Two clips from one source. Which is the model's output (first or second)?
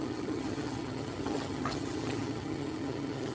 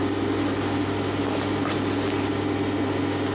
first